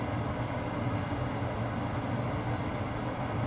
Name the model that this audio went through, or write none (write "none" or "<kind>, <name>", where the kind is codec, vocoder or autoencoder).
none